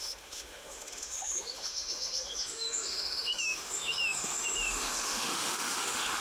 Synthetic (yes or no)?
yes